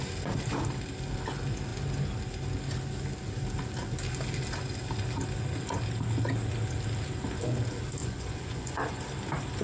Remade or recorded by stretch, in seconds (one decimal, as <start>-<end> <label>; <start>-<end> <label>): 0.0-8.0 recorded; 8.0-9.0 remade; 9.0-9.6 recorded